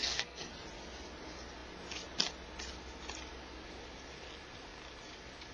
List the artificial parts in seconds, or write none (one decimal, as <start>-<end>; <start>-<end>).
0.0-0.5